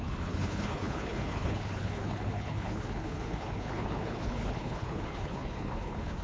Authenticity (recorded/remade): remade